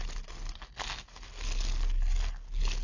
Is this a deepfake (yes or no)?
no